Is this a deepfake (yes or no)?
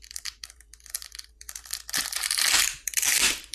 yes